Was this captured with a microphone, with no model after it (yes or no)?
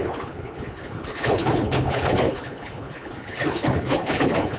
no